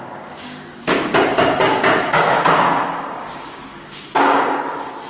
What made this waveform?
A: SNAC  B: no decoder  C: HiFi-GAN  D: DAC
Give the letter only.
D